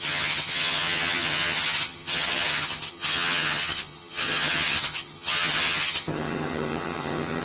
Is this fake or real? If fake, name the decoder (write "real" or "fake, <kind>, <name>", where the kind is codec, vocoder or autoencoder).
fake, vocoder, HiFi-GAN